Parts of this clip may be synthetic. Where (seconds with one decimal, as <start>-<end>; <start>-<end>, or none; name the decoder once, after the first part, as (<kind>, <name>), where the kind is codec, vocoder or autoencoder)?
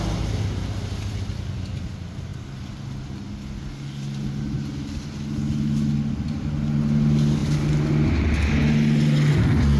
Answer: none